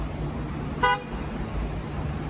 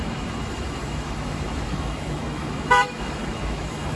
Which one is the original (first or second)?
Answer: first